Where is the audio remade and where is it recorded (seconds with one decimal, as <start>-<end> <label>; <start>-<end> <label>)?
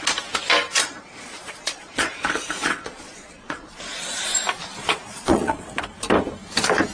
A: 0.0-0.7 recorded; 0.7-3.7 remade; 3.7-4.8 recorded; 4.8-5.8 remade; 5.8-6.9 recorded